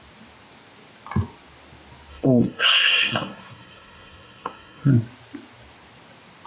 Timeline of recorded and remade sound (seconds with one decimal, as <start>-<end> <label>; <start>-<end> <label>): 0.0-2.1 recorded; 2.1-4.9 remade; 4.9-6.5 recorded